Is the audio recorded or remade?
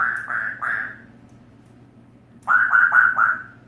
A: recorded